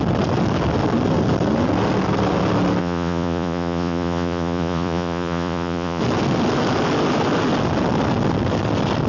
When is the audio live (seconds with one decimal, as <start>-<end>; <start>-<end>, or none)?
0.0-2.8; 6.0-9.1